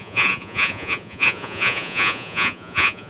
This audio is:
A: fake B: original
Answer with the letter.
A